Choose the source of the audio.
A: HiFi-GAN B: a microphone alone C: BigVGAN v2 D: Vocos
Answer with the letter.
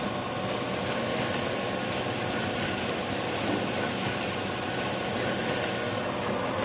B